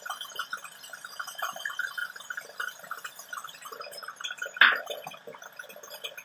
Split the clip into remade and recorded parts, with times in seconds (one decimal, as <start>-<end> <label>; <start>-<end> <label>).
0.0-2.0 recorded; 2.0-3.3 remade; 3.3-6.2 recorded